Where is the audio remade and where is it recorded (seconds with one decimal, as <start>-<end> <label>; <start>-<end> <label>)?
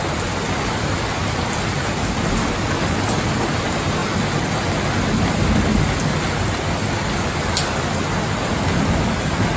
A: 0.0-9.6 recorded